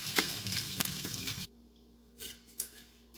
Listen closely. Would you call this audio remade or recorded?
remade